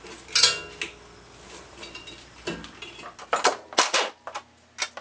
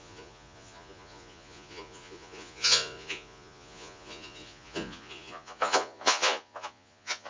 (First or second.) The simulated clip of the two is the second